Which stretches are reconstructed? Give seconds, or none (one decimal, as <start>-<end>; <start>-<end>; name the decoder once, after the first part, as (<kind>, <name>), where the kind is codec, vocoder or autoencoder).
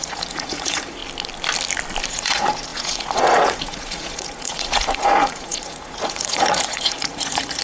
0.0-1.0 (vocoder, Vocos); 2.1-7.6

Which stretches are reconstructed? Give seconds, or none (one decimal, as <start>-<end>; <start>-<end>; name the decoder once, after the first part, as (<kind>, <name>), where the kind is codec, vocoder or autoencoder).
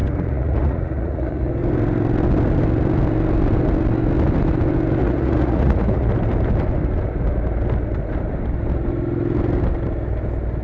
0.0-1.5 (vocoder, Vocos); 5.0-6.1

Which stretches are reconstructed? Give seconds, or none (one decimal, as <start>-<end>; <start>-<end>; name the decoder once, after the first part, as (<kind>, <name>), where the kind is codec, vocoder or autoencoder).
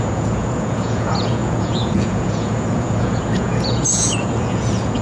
0.0-5.0 (vocoder, Vocos)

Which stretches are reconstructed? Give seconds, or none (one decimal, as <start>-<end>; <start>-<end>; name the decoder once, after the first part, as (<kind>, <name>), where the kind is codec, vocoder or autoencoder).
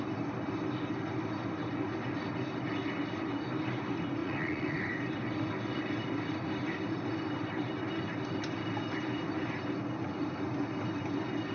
4.2-4.8 (vocoder, Vocos)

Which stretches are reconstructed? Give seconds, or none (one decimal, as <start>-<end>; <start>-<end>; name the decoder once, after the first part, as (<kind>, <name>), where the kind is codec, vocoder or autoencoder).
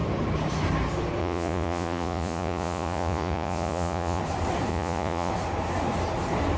1.2-4.2 (vocoder, Vocos); 4.7-5.3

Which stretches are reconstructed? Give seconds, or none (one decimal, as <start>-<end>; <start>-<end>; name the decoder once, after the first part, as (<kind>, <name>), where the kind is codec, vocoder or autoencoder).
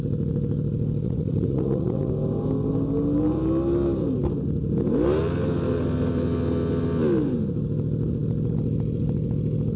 1.0-2.1 (vocoder, Vocos)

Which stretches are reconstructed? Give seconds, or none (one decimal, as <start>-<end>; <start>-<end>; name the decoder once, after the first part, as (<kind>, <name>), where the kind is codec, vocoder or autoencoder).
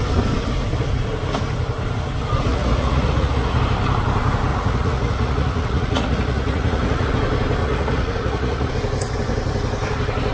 2.5-3.6 (vocoder, Vocos); 4.5-7.1; 7.6-8.7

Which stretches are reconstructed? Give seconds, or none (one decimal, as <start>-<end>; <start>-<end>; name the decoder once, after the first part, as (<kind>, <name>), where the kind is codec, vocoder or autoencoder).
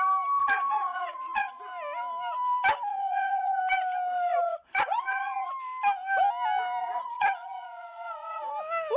0.4-1.6 (vocoder, Vocos); 2.9-3.6; 4.3-5.5; 6.8-8.5